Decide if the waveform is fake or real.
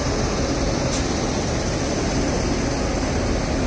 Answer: real